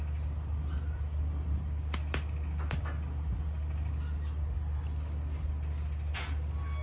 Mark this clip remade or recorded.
recorded